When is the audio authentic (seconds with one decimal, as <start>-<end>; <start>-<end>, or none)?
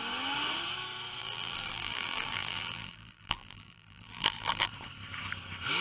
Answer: 0.0-1.2; 4.7-5.8